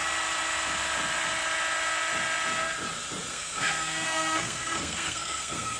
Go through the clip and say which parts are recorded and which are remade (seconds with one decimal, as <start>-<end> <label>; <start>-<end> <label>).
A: 0.0-3.3 recorded; 3.3-5.8 remade